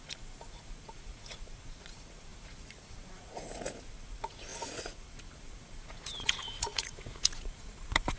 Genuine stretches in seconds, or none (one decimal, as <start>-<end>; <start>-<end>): none